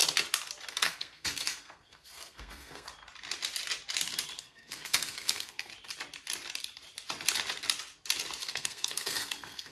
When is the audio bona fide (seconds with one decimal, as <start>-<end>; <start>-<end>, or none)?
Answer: 0.0-0.7; 2.9-4.4; 5.7-8.4